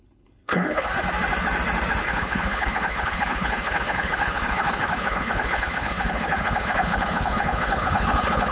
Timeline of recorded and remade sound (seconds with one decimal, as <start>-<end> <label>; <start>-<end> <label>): 0.0-0.9 remade; 0.9-2.0 recorded; 2.0-8.5 remade